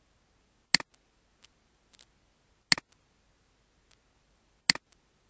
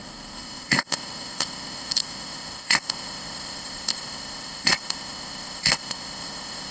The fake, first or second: second